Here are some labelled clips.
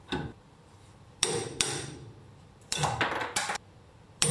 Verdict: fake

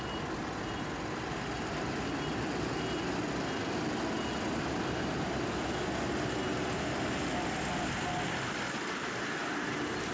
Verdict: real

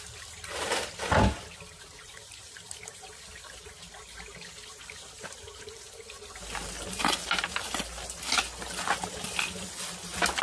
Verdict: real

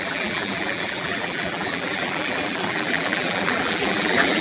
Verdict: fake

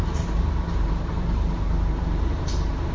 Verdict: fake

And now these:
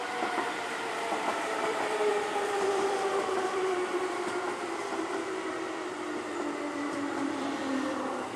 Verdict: fake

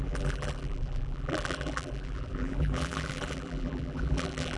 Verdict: fake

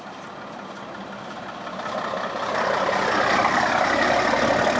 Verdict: real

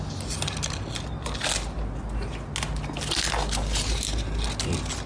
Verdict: real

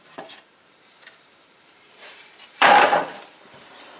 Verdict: fake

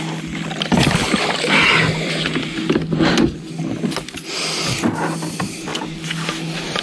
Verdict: real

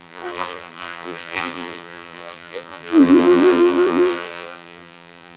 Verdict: fake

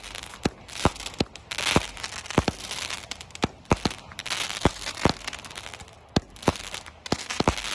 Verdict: real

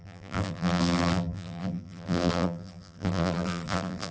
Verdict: fake